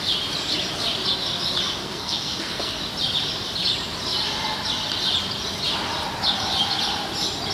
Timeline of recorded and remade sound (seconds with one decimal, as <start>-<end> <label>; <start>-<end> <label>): 0.0-1.8 recorded; 1.8-2.8 remade; 2.8-7.5 recorded